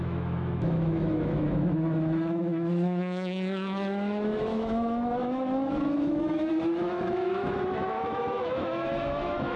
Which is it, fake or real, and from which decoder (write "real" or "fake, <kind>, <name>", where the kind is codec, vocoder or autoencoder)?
fake, autoencoder, DAC-VAE